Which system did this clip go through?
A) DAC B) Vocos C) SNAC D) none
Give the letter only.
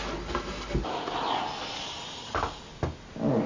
D